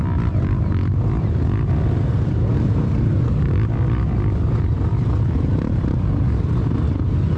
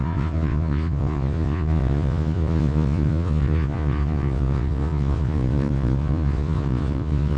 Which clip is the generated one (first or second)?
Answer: second